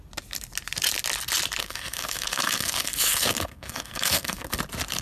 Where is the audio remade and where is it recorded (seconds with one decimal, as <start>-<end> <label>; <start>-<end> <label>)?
0.0-1.6 recorded; 1.6-4.6 remade; 4.6-5.0 recorded